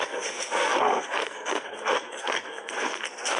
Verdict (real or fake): fake